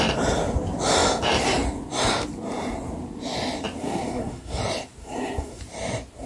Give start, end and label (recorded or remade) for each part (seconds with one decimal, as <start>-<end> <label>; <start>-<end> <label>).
0.0-3.8 recorded; 3.8-4.6 remade; 4.6-5.0 recorded; 5.0-5.6 remade; 5.6-6.3 recorded